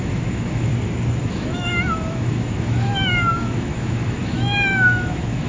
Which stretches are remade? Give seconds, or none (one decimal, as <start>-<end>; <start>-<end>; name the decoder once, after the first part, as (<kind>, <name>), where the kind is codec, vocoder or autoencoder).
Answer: 0.0-0.7 (autoencoder, DAC-VAE); 1.2-5.5